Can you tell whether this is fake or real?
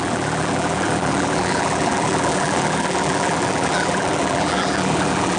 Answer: fake